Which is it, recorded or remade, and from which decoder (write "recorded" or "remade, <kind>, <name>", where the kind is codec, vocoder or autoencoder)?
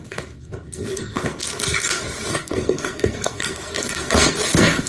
remade, codec, SNAC